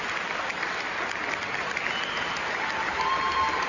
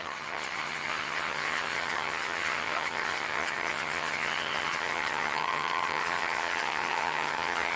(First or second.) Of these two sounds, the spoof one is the second